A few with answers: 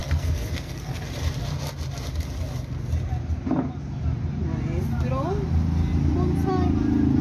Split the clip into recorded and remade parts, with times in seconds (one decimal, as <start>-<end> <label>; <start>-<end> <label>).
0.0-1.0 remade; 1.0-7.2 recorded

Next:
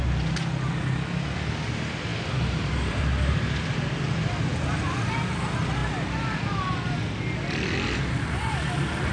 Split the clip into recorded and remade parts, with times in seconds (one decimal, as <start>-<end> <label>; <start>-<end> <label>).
0.0-9.1 recorded

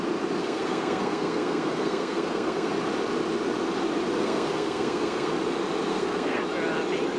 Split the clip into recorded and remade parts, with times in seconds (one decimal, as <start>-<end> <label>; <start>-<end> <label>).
0.0-0.4 recorded; 0.4-2.7 remade; 2.7-4.2 recorded; 4.2-5.3 remade; 5.3-5.9 recorded; 5.9-6.4 remade; 6.4-7.2 recorded

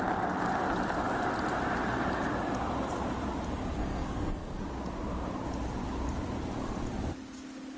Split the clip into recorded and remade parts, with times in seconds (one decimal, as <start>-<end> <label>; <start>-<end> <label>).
0.0-3.8 recorded; 3.8-4.6 remade; 4.6-7.8 recorded

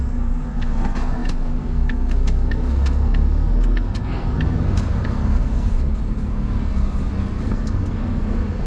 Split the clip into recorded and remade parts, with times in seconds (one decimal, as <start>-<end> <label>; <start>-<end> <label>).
0.0-8.7 remade

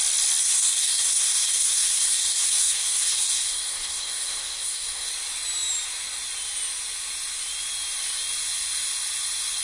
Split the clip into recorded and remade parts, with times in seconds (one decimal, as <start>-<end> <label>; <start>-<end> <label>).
0.0-0.4 recorded; 0.4-5.1 remade; 5.1-9.6 recorded

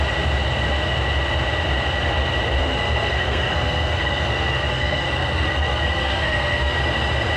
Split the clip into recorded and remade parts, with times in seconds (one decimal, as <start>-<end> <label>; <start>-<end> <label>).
0.0-2.6 recorded; 2.6-6.8 remade; 6.8-7.4 recorded